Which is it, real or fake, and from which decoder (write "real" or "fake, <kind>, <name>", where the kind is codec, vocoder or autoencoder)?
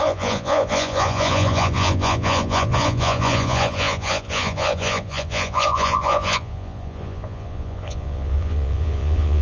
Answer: fake, vocoder, Vocos